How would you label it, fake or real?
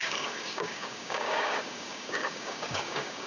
fake